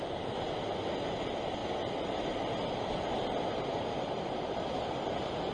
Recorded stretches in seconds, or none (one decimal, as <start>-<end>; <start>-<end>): 0.0-5.5